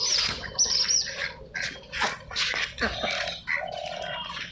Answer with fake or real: real